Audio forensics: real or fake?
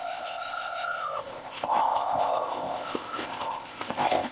fake